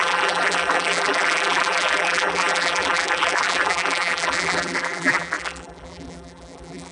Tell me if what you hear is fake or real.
fake